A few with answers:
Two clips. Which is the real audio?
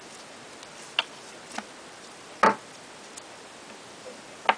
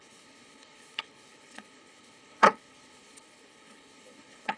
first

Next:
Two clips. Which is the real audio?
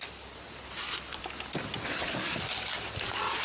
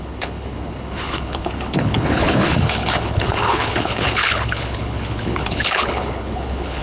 first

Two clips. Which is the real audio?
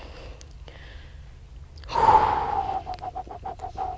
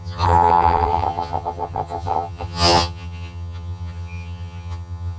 first